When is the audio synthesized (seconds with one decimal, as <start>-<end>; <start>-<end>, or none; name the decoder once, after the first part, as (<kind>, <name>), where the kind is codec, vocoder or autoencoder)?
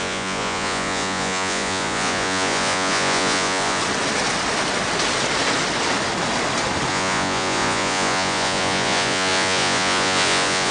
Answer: 0.0-3.8 (vocoder, Vocos); 6.9-10.7